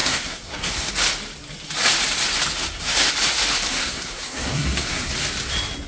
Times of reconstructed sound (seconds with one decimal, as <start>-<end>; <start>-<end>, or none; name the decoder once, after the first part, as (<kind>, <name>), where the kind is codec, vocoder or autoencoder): 0.0-0.9 (codec, SNAC); 2.6-3.1; 3.7-5.1